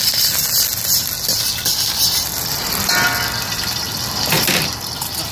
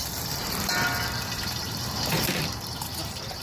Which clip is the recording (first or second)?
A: first